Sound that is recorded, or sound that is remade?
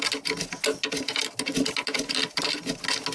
recorded